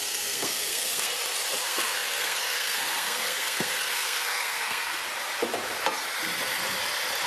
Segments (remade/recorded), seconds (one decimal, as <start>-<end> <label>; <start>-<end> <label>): 0.0-1.1 remade; 1.1-1.6 recorded; 1.6-5.0 remade; 5.0-7.3 recorded